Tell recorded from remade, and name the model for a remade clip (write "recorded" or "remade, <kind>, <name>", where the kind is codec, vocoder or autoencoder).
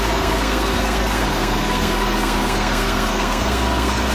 remade, codec, SNAC